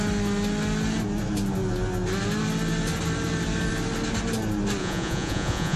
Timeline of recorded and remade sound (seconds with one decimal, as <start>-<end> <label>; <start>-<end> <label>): 0.0-4.8 recorded; 4.8-5.8 remade